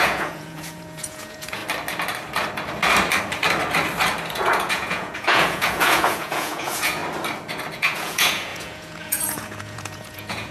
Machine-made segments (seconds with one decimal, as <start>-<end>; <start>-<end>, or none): 0.0-1.6; 4.3-7.0; 7.7-10.5